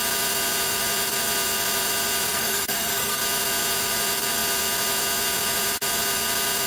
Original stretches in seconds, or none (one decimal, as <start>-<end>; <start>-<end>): 0.0-2.3; 3.2-6.7